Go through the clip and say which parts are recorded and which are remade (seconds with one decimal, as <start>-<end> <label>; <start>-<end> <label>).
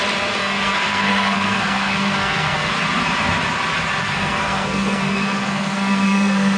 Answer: 0.0-0.4 recorded; 0.4-2.7 remade; 2.7-4.0 recorded; 4.0-6.6 remade